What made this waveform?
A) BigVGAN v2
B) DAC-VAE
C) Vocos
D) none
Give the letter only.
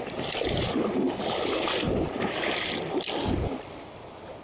D